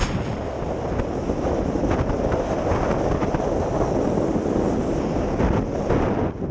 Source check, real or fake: real